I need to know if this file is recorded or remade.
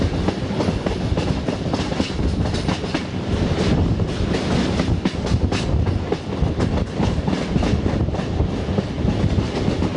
recorded